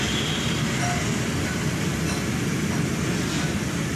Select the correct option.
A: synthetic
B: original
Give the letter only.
B